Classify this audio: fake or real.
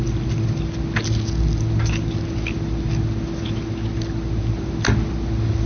real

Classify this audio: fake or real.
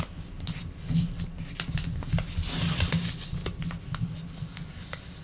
real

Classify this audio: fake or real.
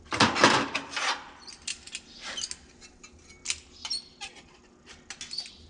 real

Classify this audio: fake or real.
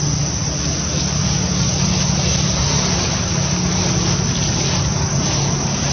real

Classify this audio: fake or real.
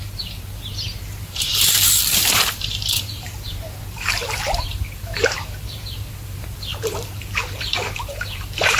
fake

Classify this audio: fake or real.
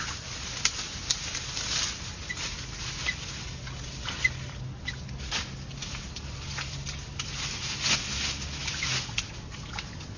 real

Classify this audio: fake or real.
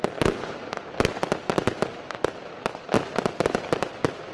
real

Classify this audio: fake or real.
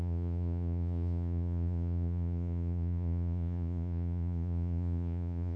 fake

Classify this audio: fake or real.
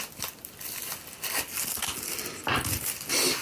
real